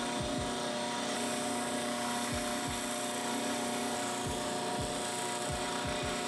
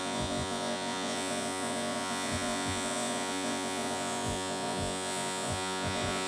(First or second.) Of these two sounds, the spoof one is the second